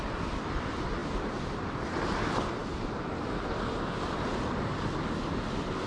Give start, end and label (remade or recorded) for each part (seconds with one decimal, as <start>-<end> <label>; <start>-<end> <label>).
0.0-5.9 recorded